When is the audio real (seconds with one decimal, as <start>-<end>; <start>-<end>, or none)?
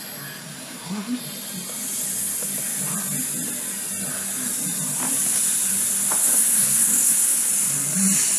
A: 0.0-0.4; 1.2-6.2; 7.5-8.4